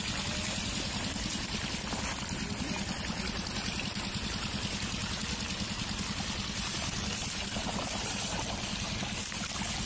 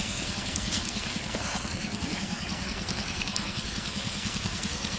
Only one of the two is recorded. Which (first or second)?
first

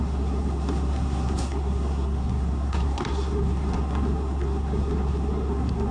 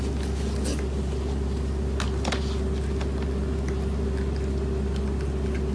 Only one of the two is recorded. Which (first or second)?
second